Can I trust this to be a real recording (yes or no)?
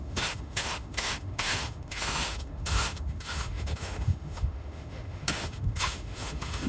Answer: no